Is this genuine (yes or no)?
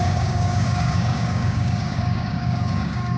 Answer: no